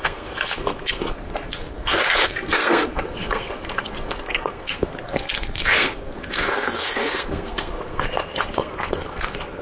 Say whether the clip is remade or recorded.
remade